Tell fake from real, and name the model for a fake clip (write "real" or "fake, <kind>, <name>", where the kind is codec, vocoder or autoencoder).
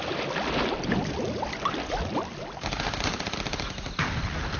fake, vocoder, BigVGAN v2